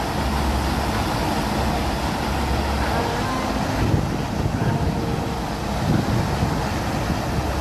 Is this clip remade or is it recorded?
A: recorded